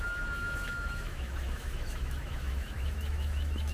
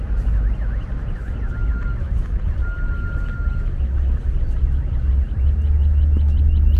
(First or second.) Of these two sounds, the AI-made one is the first